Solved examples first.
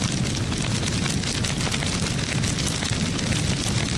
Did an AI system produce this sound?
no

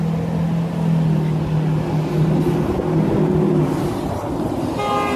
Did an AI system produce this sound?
no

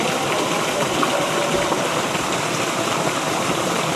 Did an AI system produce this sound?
yes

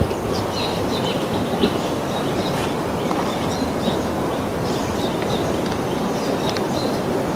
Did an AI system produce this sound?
no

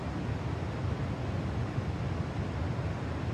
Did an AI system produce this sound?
no